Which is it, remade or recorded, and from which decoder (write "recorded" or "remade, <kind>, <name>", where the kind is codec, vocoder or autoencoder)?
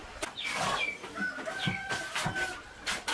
recorded